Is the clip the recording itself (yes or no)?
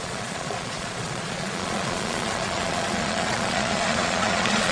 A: no